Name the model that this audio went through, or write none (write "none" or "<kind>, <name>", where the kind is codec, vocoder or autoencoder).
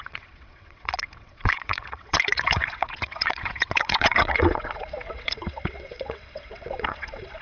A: vocoder, WaveNeXt